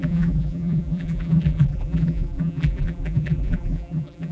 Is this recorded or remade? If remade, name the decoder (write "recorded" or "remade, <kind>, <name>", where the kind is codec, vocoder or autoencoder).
remade, vocoder, BigVGAN v2